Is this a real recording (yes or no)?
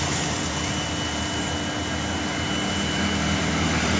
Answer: yes